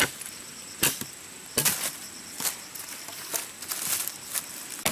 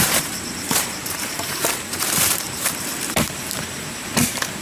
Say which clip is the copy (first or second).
second